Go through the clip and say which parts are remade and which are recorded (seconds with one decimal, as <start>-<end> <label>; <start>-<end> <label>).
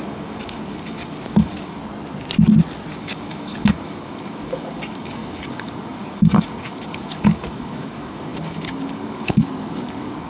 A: 0.0-1.8 remade; 1.8-2.9 recorded; 2.9-10.3 remade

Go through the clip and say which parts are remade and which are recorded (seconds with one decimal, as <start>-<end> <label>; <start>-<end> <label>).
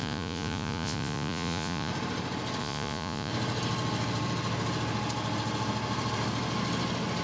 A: 0.0-1.9 remade; 1.9-2.6 recorded; 2.6-3.3 remade; 3.3-7.2 recorded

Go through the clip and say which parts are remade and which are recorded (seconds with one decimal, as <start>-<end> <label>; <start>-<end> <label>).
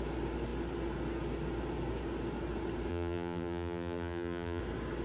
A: 0.0-2.9 recorded; 2.9-4.6 remade; 4.6-5.0 recorded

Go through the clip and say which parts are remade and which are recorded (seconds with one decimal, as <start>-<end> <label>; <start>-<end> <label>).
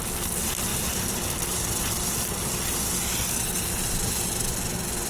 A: 0.0-0.7 recorded; 0.7-1.9 remade; 1.9-5.1 recorded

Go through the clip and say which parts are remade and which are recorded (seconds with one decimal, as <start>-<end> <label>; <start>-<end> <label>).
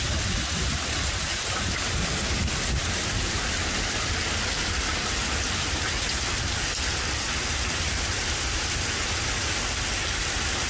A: 0.0-10.7 recorded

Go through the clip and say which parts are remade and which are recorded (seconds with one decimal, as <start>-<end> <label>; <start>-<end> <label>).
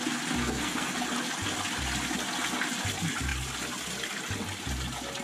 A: 0.0-0.4 recorded; 0.4-1.0 remade; 1.0-5.2 recorded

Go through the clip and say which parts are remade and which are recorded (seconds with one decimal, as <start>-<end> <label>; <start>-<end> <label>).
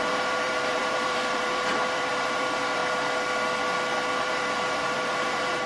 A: 0.0-2.8 remade; 2.8-4.2 recorded; 4.2-5.7 remade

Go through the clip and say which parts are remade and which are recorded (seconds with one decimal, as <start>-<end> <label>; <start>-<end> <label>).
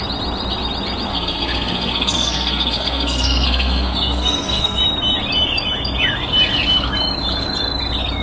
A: 0.0-1.1 recorded; 1.1-4.8 remade; 4.8-8.2 recorded